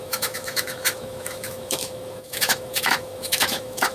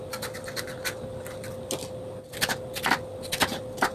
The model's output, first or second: first